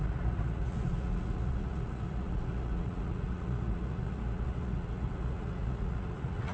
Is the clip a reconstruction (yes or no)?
yes